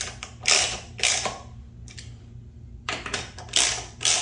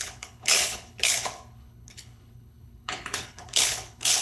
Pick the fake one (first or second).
second